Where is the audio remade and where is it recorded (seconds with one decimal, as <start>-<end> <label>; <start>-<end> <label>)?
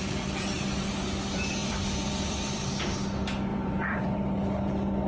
0.0-1.6 recorded; 1.6-2.7 remade; 2.7-3.5 recorded; 3.5-4.2 remade; 4.2-5.1 recorded